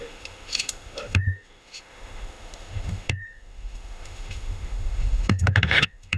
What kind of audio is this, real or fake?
fake